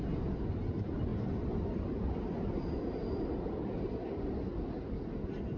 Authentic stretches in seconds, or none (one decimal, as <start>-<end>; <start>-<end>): 0.0-5.6

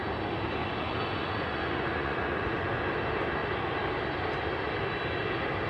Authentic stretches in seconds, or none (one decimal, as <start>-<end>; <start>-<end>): 0.0-0.6; 2.8-5.7

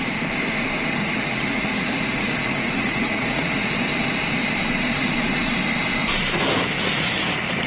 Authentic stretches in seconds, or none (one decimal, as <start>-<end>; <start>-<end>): 0.0-1.0; 3.7-7.7

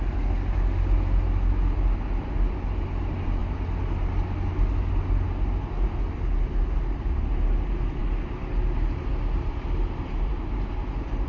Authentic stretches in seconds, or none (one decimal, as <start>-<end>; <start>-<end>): 0.0-11.3

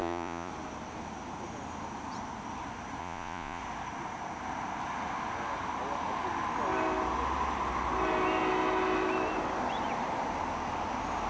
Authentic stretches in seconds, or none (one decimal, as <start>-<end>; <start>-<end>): 0.5-3.0; 3.6-11.3